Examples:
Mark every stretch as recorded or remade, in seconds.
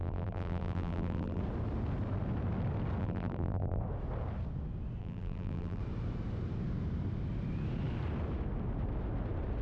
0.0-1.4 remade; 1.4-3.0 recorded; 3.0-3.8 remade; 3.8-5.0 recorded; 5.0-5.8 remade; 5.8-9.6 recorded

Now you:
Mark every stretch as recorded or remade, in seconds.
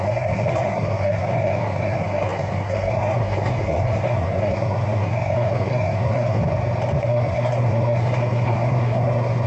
0.0-6.4 remade; 6.4-7.0 recorded; 7.0-9.5 remade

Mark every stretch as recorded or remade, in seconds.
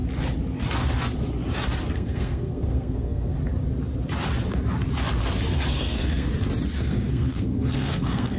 0.0-1.9 recorded; 1.9-3.3 remade; 3.3-5.8 recorded; 5.8-6.3 remade; 6.3-6.8 recorded; 6.8-8.4 remade